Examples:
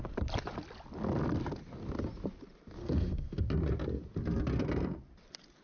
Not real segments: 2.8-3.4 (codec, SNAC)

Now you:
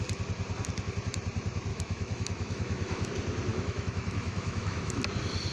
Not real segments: 1.7-3.1 (autoencoder, DAC-VAE); 3.5-5.0

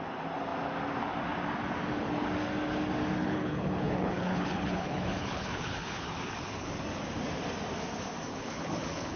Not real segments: 3.2-6.8 (codec, HILCodec); 8.3-9.2

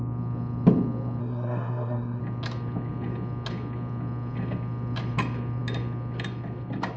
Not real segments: 1.2-2.2 (codec, SNAC)

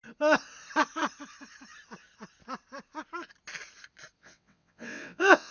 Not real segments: 4.2-5.5 (vocoder, WaveNeXt)

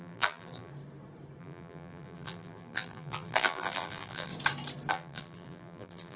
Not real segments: 0.0-0.7 (vocoder, BigVGAN v2); 1.4-4.3; 4.9-6.2

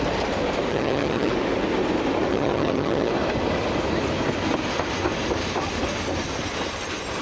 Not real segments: 0.7-1.3 (vocoder, HiFi-GAN); 2.3-3.1